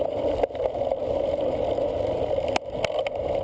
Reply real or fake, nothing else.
real